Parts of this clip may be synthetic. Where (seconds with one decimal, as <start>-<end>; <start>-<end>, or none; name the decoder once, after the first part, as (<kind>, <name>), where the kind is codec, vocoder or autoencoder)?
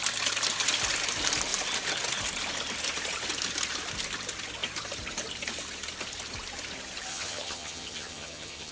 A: 7.1-8.7 (vocoder, HiFi-GAN)